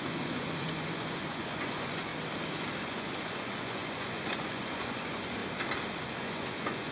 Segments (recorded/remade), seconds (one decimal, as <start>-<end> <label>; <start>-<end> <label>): 0.0-2.1 remade; 2.1-2.8 recorded; 2.8-5.4 remade; 5.4-6.2 recorded; 6.2-6.9 remade